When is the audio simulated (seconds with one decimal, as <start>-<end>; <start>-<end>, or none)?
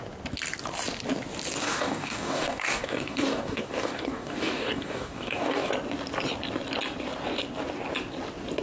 1.6-5.7